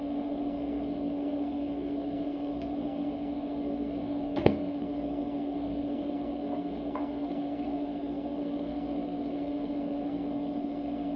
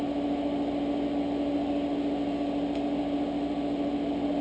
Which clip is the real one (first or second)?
second